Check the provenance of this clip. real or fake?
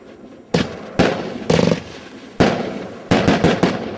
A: real